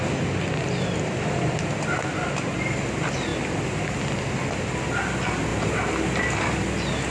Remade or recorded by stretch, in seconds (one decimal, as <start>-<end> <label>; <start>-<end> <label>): 0.0-7.1 recorded